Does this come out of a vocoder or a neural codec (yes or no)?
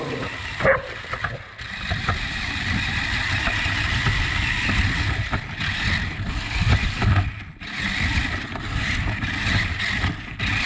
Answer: no